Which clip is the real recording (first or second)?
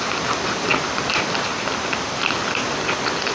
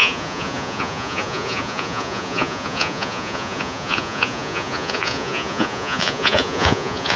first